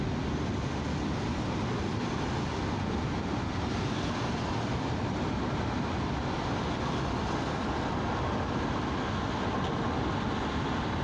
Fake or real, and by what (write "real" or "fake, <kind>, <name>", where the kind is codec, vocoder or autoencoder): real